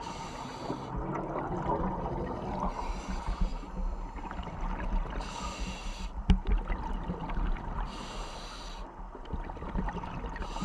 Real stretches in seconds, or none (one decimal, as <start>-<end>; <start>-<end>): 0.0-10.6